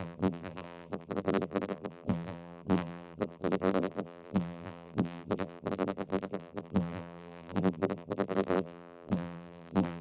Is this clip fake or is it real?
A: fake